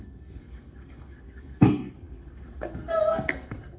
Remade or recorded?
remade